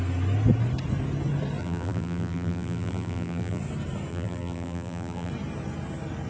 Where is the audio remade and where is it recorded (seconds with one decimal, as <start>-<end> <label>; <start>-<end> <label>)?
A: 0.0-1.6 recorded; 1.6-3.6 remade; 3.6-4.1 recorded; 4.1-5.3 remade; 5.3-6.3 recorded